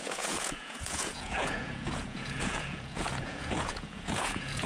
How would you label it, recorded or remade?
remade